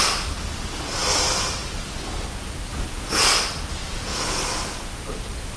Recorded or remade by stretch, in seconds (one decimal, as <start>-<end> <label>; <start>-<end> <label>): 0.0-2.7 recorded; 2.7-3.3 remade; 3.3-3.8 recorded; 3.8-4.9 remade; 4.9-5.6 recorded